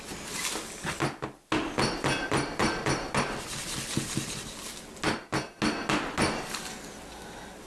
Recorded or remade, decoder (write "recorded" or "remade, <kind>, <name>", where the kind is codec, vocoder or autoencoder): recorded